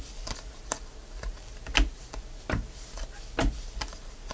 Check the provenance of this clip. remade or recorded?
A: recorded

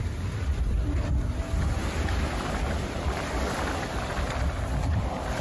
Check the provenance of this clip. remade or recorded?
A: recorded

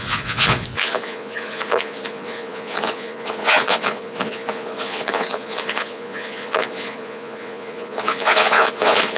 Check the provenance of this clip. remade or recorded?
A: remade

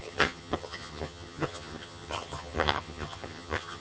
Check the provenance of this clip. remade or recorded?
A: remade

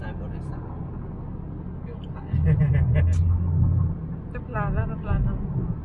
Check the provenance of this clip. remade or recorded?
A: recorded